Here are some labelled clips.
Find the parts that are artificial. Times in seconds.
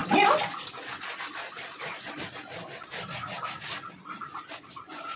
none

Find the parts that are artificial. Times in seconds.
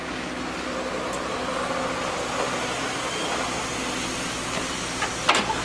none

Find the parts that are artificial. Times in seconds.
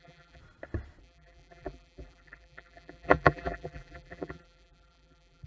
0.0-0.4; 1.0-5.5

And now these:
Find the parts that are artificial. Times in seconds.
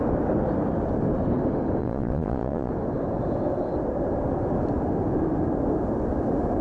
1.8-2.7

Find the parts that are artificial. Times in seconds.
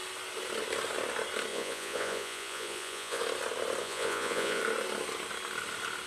1.5-3.2; 3.8-4.6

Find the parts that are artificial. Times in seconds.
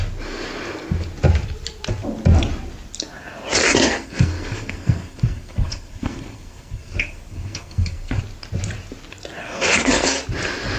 3.6-8.2; 9.4-10.2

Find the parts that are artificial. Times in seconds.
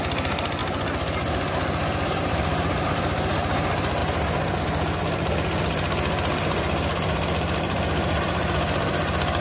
none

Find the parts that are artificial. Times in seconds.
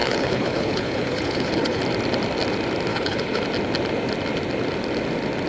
0.0-1.8; 2.9-3.4